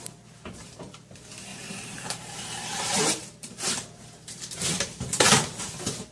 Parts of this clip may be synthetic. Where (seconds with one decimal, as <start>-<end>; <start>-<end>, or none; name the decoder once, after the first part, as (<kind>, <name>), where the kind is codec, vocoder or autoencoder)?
1.5-5.2 (vocoder, BigVGAN v2)